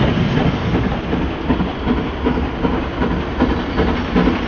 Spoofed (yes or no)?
no